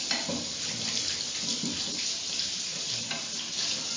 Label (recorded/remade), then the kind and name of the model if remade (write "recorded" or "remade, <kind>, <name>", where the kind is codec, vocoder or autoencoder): recorded